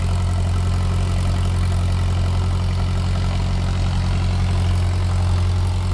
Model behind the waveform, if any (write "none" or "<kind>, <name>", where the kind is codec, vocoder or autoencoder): none